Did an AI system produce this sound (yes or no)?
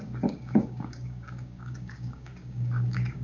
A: yes